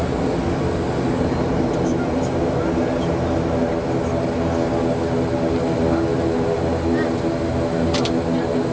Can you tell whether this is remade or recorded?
recorded